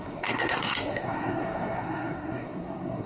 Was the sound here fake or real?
fake